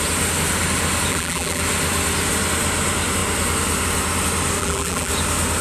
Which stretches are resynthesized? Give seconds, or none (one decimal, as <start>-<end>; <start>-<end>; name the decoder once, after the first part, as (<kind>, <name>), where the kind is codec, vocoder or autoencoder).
1.1-1.6 (vocoder, BigVGAN v2); 4.6-5.1